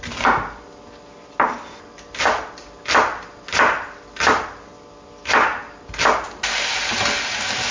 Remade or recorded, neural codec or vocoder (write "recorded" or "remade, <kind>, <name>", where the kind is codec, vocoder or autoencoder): recorded